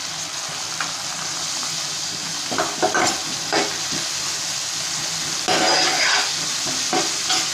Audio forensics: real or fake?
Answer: real